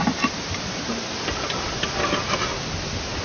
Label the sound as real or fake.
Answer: real